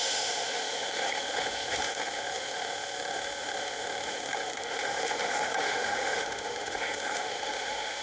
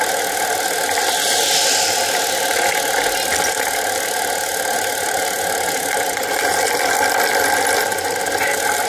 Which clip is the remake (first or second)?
first